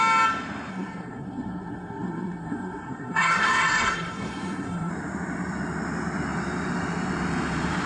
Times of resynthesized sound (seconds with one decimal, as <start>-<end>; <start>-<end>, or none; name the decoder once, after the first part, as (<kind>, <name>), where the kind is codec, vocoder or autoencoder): 0.7-4.9 (codec, SNAC)